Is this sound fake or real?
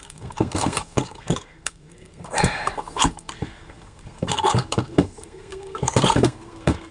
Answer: fake